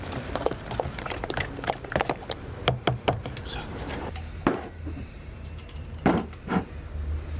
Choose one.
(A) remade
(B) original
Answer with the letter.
A